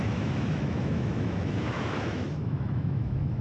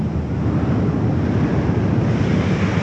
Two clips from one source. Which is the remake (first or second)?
first